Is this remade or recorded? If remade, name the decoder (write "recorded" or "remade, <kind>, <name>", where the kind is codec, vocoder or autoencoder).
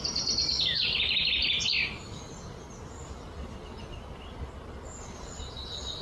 recorded